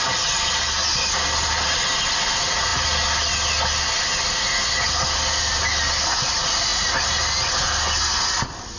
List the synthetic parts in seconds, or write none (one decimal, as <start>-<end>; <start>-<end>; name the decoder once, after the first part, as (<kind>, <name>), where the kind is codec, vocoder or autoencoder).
none